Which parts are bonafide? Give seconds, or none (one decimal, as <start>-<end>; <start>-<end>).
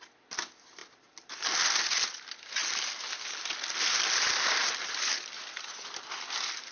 0.0-6.7